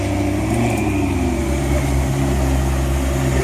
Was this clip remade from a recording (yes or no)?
no